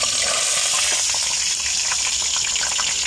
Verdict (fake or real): real